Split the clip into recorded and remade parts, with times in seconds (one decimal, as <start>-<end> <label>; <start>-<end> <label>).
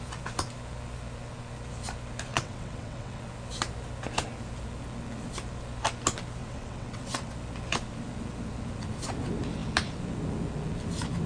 0.0-2.3 recorded; 2.3-3.2 remade; 3.2-6.4 recorded; 6.4-7.3 remade; 7.3-11.3 recorded